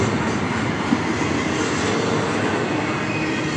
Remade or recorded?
recorded